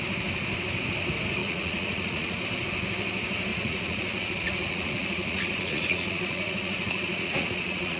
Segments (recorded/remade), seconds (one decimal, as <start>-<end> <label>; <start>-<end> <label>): 0.0-1.4 recorded; 1.4-2.4 remade; 2.4-3.5 recorded; 3.5-8.0 remade